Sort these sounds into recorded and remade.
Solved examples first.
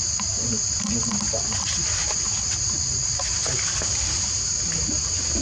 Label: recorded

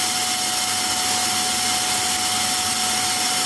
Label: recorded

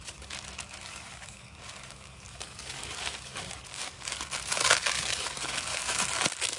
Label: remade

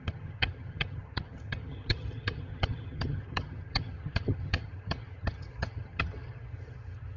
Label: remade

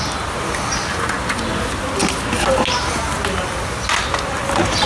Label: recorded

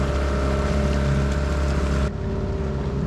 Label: recorded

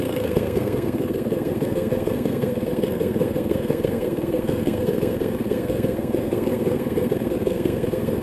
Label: remade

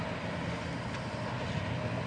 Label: recorded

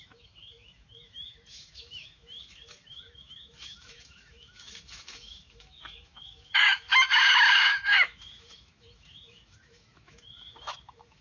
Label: remade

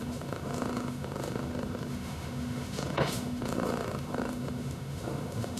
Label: remade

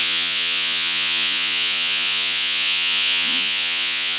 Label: remade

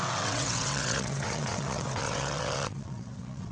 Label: remade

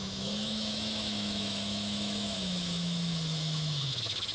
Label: remade